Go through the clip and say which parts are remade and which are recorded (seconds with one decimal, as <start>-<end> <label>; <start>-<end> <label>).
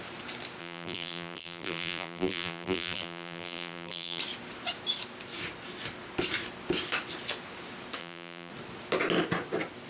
0.0-0.6 recorded; 0.6-4.2 remade; 4.2-8.0 recorded; 8.0-8.5 remade; 8.5-9.9 recorded